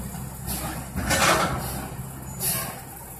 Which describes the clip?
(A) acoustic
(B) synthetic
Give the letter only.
A